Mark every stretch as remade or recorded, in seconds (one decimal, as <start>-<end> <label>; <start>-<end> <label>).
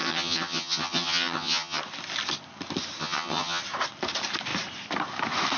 0.0-1.8 remade; 1.8-3.0 recorded; 3.0-3.6 remade; 3.6-5.6 recorded